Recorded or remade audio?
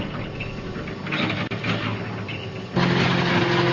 recorded